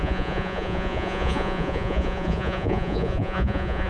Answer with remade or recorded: remade